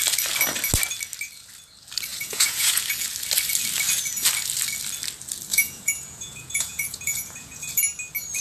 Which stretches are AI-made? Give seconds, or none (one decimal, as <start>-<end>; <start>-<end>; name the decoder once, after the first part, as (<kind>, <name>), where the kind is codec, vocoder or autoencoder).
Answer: 2.1-2.8 (vocoder, Vocos); 5.5-7.8